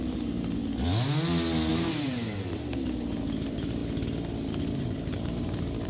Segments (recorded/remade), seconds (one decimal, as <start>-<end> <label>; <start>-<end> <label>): 0.0-0.6 remade; 0.6-1.7 recorded; 1.7-3.8 remade; 3.8-4.6 recorded; 4.6-5.9 remade